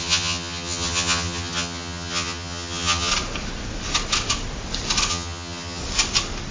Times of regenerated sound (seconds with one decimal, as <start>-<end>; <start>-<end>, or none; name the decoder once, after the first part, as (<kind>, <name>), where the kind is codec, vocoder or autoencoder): 0.0-3.1 (vocoder, HiFi-GAN); 5.1-5.8